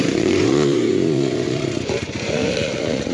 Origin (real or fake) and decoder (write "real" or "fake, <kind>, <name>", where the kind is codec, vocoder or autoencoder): fake, vocoder, Vocos